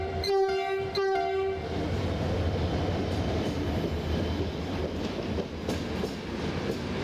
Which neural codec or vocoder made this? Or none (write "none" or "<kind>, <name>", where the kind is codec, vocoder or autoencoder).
none